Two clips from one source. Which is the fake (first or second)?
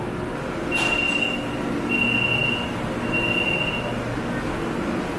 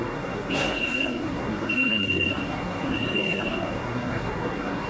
second